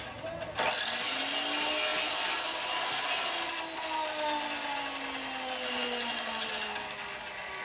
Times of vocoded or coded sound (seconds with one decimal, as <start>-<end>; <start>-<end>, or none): none